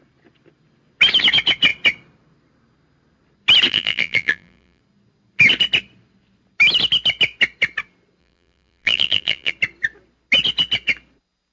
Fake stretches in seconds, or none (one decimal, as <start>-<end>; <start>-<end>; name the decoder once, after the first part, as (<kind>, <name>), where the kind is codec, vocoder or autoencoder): 3.7-4.8 (vocoder, BigVGAN v2); 8.2-9.5